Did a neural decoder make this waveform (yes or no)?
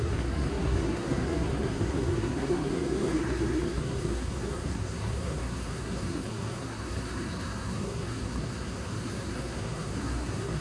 yes